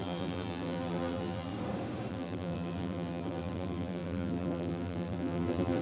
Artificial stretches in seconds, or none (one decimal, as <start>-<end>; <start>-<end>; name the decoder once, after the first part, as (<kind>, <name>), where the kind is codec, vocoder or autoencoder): 0.0-1.5 (vocoder, BigVGAN v2); 2.1-5.8

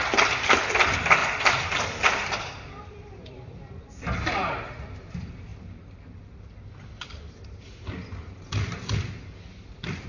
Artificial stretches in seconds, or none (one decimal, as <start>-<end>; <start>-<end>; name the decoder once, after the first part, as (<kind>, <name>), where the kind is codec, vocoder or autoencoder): 1.2-3.9 (vocoder, BigVGAN v2)

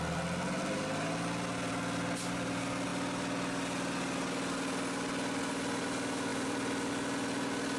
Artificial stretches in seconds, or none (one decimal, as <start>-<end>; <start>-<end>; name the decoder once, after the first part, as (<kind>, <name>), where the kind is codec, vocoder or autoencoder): 6.3-6.9 (vocoder, BigVGAN v2)